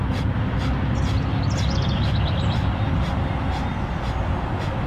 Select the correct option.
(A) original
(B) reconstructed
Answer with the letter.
A